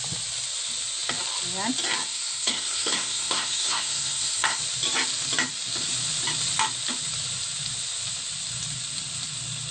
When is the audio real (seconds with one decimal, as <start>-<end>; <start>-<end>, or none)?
0.0-2.1; 4.6-9.7